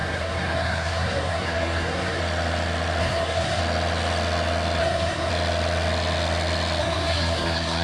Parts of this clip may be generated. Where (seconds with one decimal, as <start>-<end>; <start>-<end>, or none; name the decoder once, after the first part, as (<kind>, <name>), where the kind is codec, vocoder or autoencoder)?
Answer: 0.0-2.2 (codec, SNAC); 3.0-3.6; 4.8-5.3; 6.8-7.8

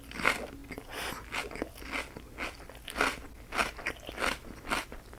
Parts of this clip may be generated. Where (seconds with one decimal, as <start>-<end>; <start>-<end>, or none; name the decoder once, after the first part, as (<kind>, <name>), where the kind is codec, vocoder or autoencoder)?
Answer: none

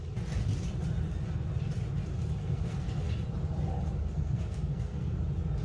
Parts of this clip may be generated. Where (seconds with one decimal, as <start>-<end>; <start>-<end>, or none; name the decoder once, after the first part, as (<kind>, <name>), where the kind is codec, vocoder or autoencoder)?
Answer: 2.4-3.1 (codec, SNAC); 4.0-5.1

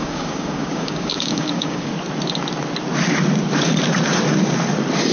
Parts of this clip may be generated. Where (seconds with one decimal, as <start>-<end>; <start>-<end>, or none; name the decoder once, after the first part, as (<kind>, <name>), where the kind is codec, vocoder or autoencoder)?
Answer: 0.0-1.9 (codec, DAC)

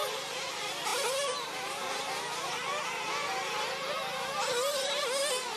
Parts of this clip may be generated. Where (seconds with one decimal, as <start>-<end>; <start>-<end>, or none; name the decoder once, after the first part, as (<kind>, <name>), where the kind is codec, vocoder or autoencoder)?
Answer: 0.9-2.5 (vocoder, BigVGAN v2)

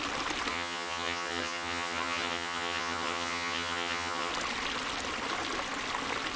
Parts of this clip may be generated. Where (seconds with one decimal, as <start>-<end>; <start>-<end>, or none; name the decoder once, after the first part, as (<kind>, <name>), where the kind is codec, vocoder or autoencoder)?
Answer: 0.5-4.3 (vocoder, HiFi-GAN)

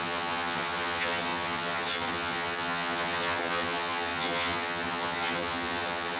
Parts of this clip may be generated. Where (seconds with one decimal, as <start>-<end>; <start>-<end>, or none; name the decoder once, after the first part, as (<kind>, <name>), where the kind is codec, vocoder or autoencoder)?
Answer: 0.0-6.2 (vocoder, HiFi-GAN)

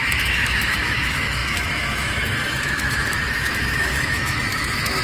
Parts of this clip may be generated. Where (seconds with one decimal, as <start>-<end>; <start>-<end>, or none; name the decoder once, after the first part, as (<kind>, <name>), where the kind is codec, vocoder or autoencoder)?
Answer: 0.0-5.0 (autoencoder, DAC-VAE)